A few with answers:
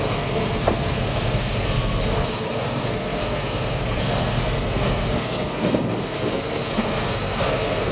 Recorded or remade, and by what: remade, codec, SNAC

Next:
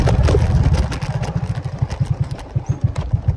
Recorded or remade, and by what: recorded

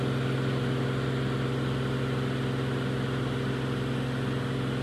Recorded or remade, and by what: recorded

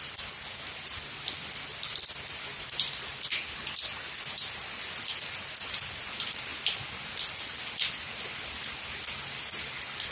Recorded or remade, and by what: recorded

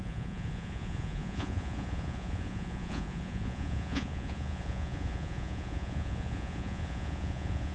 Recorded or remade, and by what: remade, vocoder, Vocos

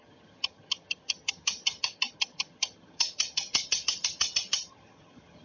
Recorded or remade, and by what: remade, vocoder, HiFi-GAN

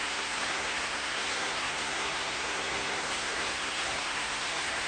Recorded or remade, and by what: remade, codec, SNAC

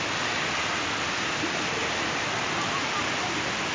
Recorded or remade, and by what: recorded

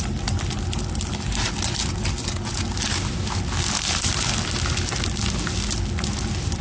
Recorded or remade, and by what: recorded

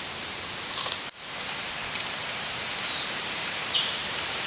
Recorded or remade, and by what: remade, vocoder, BigVGAN v2